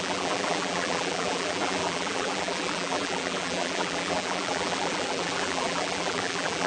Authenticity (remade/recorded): remade